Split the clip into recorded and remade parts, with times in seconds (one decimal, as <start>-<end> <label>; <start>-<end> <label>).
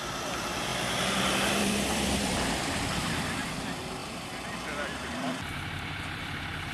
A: 0.0-6.7 remade